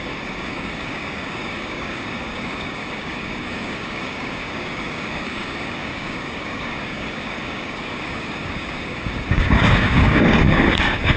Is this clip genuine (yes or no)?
no